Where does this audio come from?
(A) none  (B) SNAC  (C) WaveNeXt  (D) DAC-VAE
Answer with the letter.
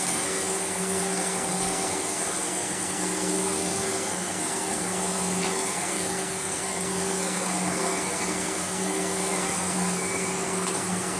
B